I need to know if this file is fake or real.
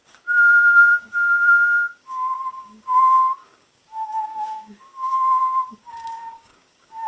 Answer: fake